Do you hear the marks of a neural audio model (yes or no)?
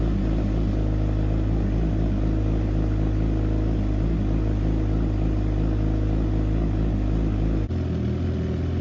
no